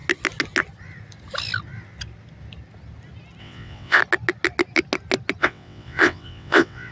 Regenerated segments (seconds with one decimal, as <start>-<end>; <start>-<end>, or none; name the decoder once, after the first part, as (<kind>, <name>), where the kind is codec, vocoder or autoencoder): 3.4-4.0 (vocoder, WaveNeXt); 5.4-6.9